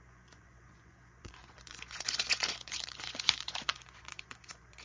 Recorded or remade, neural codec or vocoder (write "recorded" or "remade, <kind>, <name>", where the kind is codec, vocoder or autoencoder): remade, vocoder, Vocos